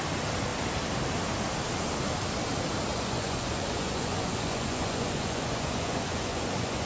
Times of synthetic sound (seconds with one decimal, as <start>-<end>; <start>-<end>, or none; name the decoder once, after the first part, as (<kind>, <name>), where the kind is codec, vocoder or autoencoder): 2.9-6.9 (vocoder, Vocos)